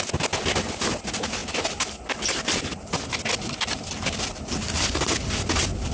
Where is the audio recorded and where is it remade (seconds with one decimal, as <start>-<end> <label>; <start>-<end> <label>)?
0.0-5.9 recorded